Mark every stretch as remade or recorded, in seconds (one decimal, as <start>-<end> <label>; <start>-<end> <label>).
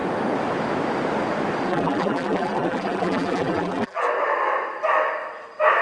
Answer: 0.0-1.7 recorded; 1.7-4.0 remade; 4.0-5.8 recorded